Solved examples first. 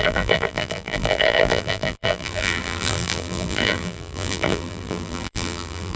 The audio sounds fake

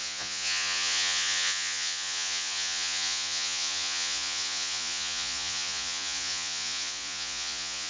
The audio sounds fake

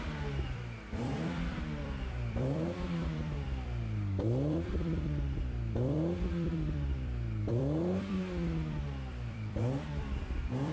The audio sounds fake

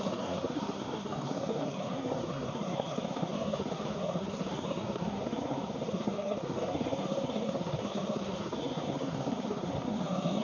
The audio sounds fake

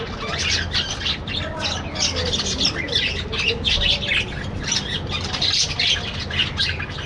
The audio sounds real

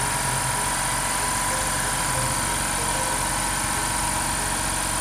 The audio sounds real